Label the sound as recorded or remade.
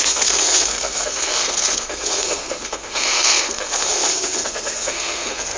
remade